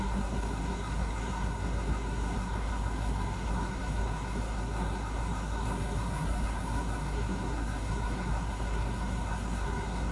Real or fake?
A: fake